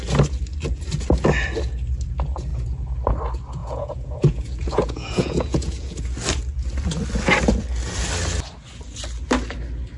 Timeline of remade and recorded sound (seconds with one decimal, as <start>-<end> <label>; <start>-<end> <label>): 0.0-3.6 recorded; 3.6-6.0 remade; 6.0-10.0 recorded